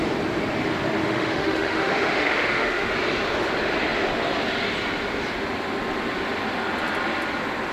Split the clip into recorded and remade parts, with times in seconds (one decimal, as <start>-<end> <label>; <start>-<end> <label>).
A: 0.0-1.0 recorded; 1.0-2.9 remade; 2.9-7.7 recorded